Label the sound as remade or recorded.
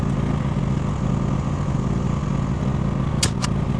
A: recorded